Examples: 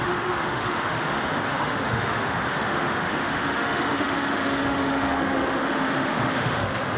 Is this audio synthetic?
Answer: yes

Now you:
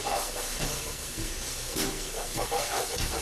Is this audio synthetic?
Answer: yes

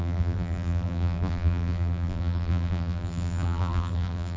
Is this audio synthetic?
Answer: yes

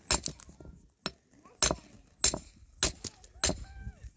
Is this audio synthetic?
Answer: no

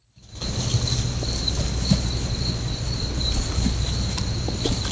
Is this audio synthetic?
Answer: no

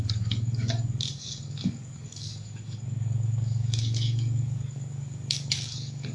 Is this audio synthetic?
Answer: yes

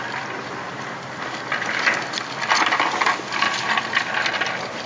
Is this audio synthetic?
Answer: no